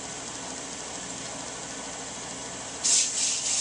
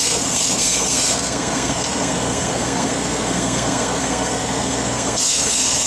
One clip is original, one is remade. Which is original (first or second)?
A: first